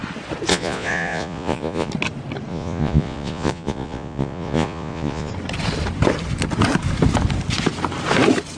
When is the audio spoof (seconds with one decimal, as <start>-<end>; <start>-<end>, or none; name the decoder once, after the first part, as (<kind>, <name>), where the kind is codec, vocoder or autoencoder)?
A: 0.5-1.9 (vocoder, Vocos); 2.5-5.3